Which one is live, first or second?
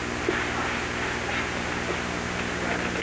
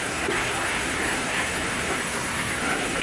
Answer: first